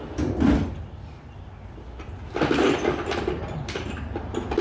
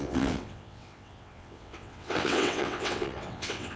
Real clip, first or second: first